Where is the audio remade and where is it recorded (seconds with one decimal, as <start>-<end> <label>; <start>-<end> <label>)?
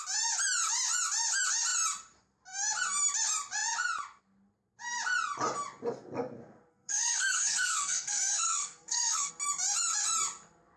0.0-6.7 recorded; 6.7-9.3 remade; 9.3-10.8 recorded